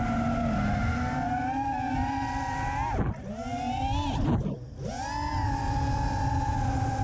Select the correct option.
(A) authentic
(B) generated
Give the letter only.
A